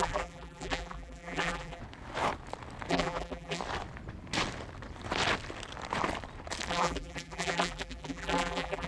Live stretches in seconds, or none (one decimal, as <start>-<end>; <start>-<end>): 1.8-2.9; 3.6-6.7